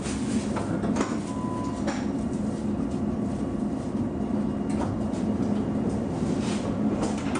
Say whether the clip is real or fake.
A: real